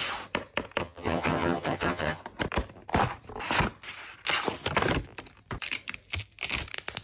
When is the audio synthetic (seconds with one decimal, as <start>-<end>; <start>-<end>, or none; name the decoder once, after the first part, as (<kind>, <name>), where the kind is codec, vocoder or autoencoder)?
0.8-2.2 (vocoder, HiFi-GAN)